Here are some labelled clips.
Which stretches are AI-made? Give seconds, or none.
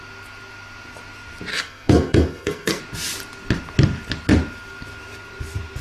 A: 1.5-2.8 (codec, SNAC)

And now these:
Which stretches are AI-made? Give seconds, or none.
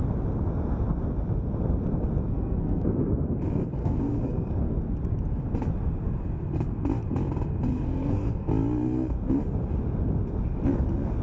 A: 2.3-3.1 (codec, SNAC); 3.8-4.7; 7.7-8.5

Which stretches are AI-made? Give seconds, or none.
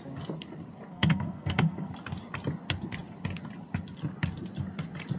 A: 0.9-1.9 (codec, SNAC)